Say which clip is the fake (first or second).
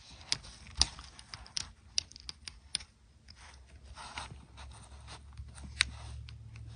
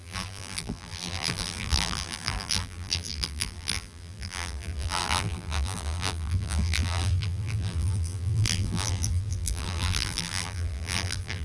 second